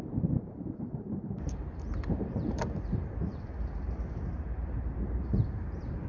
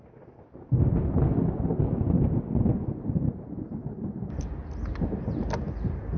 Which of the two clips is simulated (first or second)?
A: first